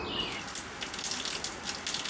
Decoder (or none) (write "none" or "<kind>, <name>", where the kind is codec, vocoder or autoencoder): none